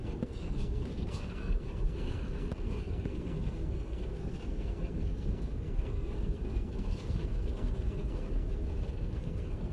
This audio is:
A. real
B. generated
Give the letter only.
B